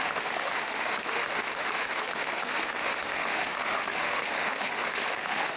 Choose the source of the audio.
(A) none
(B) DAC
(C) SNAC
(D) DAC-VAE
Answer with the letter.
D